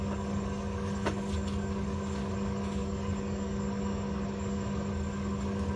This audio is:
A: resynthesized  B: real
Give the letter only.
A